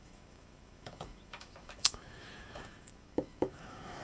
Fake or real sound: fake